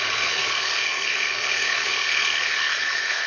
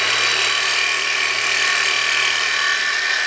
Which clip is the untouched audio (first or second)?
second